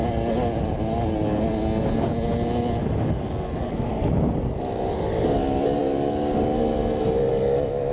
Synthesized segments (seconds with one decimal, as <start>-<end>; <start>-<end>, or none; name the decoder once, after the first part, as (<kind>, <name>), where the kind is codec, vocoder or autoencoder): none